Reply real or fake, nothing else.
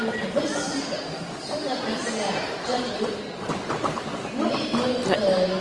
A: fake